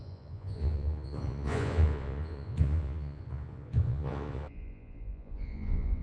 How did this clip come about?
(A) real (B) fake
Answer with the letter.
B